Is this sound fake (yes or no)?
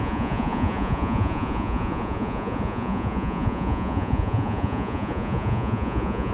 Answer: yes